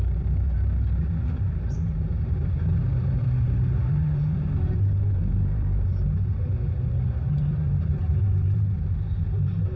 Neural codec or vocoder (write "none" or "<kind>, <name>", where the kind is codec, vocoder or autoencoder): vocoder, BigVGAN v2